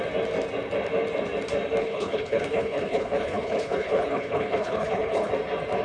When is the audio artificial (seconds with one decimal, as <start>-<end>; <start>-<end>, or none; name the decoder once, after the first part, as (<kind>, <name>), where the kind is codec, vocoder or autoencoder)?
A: 1.8-5.3 (codec, HILCodec)